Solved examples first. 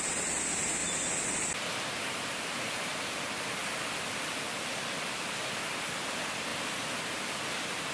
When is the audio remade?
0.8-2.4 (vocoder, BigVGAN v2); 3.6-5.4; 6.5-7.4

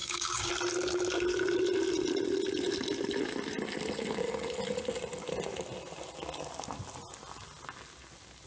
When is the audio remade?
0.0-0.5 (codec, DAC)

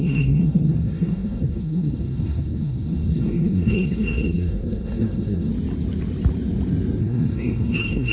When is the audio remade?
0.0-5.5 (codec, SNAC); 7.0-8.1

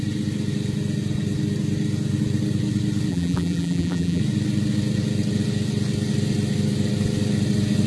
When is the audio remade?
3.1-4.2 (vocoder, BigVGAN v2)